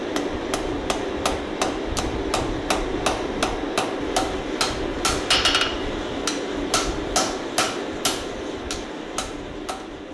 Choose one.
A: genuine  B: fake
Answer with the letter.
A